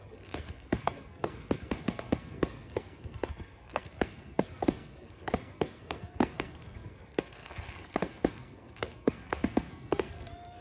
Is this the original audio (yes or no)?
no